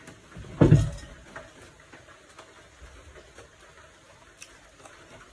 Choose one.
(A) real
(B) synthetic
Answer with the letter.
A